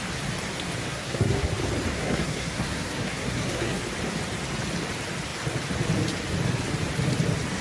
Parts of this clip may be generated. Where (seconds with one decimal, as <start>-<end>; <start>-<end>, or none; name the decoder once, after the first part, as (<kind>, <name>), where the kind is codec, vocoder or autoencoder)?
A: 0.9-1.5 (codec, SNAC); 1.9-3.8